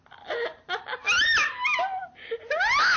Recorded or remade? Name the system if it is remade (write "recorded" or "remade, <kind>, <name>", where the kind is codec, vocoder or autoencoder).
recorded